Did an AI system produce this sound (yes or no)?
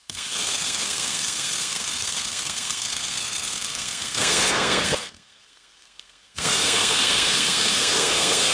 yes